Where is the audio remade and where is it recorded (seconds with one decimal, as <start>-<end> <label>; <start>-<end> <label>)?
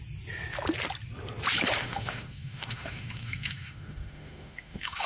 0.0-1.8 recorded; 1.8-5.1 remade